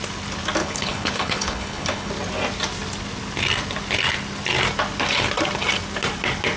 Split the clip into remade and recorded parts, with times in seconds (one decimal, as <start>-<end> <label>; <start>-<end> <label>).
0.0-0.6 recorded; 0.6-2.1 remade; 2.1-6.6 recorded